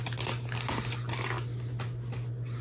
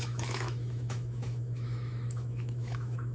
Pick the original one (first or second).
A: first